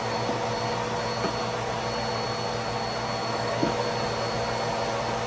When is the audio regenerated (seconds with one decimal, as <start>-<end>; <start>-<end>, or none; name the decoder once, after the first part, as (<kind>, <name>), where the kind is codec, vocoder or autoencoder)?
3.2-3.8 (autoencoder, DAC-VAE)